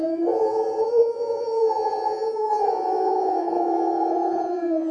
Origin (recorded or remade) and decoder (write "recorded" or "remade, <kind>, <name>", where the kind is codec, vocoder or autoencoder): remade, vocoder, Vocos